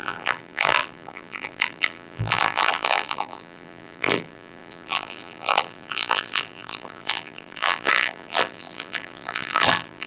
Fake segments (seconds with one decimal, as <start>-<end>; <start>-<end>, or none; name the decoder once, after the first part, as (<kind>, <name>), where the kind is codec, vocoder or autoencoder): 0.0-10.1 (vocoder, BigVGAN v2)